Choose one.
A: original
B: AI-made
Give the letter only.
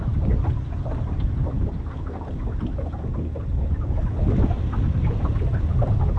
A